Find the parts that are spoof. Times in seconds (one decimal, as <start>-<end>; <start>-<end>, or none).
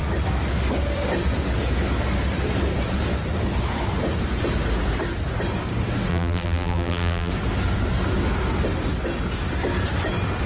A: 6.1-7.3